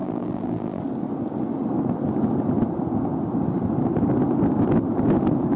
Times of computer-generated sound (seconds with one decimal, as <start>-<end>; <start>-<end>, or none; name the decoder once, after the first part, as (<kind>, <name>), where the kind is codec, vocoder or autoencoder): 0.0-0.8 (vocoder, BigVGAN v2)